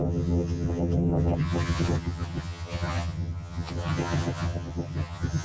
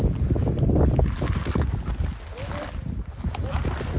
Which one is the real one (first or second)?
second